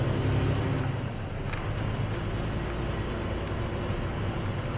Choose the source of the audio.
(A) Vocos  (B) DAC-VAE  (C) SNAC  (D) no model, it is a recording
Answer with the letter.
D